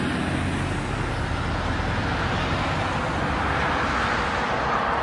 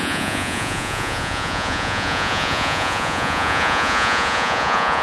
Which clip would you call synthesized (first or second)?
second